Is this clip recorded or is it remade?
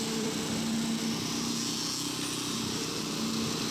recorded